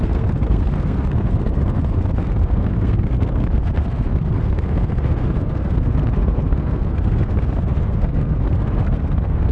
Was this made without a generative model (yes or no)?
no